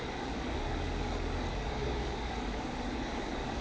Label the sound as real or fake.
fake